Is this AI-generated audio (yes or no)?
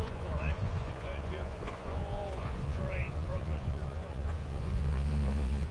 yes